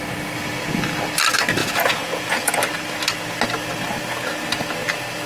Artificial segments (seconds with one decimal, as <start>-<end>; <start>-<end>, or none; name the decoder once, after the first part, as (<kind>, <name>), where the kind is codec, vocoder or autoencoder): 1.6-2.5 (vocoder, Vocos)